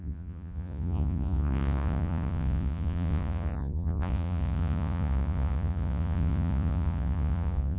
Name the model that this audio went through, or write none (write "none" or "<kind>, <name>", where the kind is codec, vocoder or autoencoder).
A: vocoder, Vocos